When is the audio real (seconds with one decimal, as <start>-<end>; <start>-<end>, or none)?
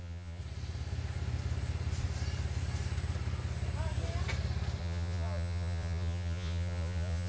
0.4-4.8